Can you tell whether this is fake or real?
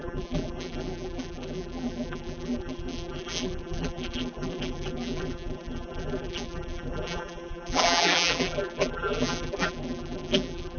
fake